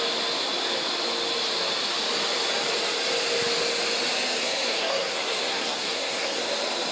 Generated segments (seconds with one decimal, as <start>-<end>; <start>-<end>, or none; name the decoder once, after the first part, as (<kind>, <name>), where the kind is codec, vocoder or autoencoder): 4.4-6.4 (codec, SNAC)